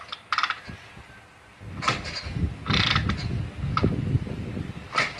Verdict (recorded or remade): recorded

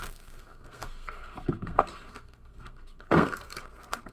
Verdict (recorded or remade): remade